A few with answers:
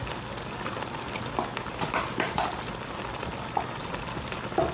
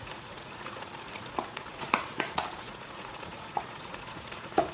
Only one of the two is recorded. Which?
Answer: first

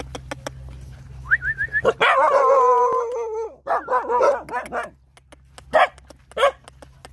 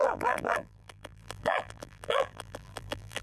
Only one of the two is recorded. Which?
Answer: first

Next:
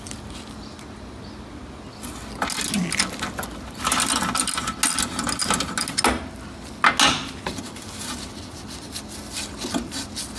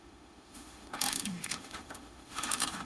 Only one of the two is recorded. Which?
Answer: first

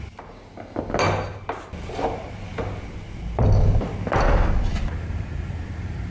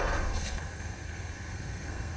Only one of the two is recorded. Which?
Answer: first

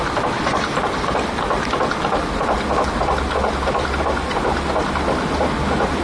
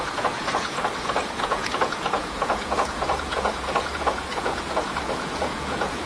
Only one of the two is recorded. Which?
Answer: first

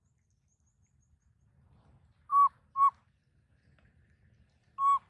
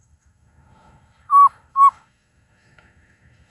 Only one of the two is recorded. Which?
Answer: first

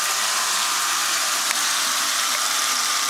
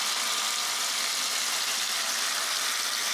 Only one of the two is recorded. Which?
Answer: second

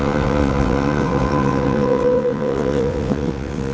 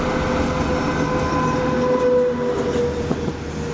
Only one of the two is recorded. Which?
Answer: second